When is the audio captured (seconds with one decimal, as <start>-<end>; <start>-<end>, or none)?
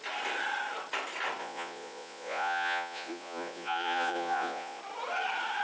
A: 0.0-1.4; 4.8-5.6